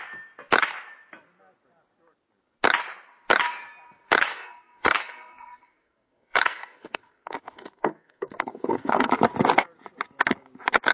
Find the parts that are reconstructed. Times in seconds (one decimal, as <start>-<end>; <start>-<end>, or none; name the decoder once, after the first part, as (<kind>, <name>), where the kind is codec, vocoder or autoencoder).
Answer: 4.3-9.1 (codec, SNAC)